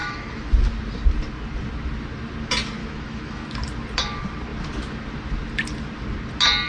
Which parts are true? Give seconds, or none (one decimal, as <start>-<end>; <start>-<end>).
0.5-2.8; 3.5-6.7